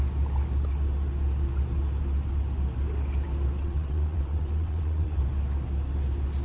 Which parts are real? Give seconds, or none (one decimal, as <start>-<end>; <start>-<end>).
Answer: 0.0-3.6; 5.2-6.4